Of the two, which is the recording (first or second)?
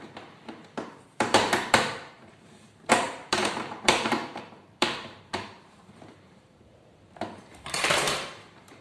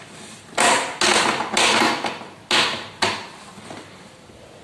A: second